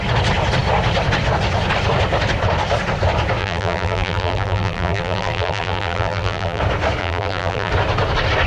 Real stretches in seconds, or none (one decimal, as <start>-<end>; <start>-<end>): 0.0-3.4; 6.6-7.0; 7.7-8.5